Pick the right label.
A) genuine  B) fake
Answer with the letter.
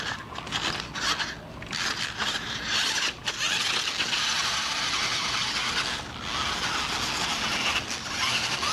A